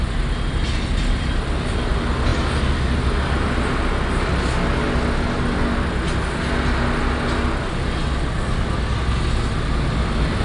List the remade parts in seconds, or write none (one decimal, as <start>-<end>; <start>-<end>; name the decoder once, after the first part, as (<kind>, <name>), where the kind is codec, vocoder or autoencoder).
none